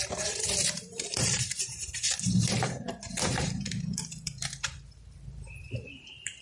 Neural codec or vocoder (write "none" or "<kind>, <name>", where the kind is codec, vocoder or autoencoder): vocoder, BigVGAN v2